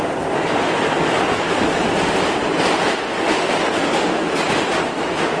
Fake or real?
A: real